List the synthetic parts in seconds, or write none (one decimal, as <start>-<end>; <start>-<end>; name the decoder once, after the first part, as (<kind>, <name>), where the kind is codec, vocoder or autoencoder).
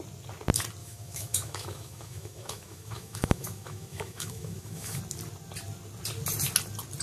0.8-5.0 (autoencoder, DAC-VAE)